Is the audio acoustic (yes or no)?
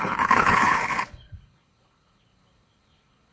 no